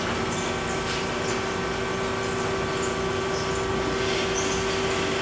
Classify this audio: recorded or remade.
recorded